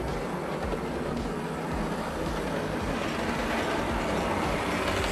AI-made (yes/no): no